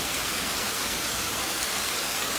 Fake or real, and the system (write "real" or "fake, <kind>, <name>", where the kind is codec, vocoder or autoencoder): fake, codec, SNAC